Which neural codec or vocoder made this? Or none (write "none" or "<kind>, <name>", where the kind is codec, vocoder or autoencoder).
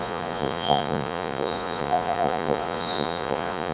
vocoder, Vocos